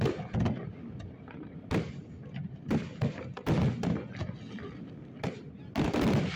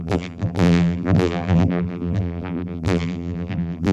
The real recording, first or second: first